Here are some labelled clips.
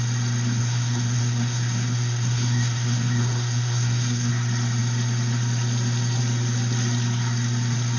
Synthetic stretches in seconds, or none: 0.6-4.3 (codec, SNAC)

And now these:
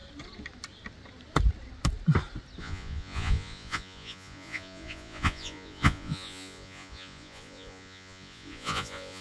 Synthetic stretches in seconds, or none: 2.6-9.2 (vocoder, Vocos)

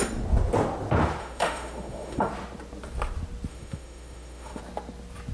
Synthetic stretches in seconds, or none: 1.2-2.3 (autoencoder, DAC-VAE); 3.5-4.6

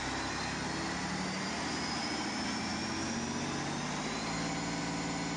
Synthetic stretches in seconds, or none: none